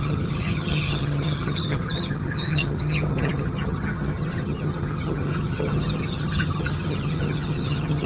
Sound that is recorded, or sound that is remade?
remade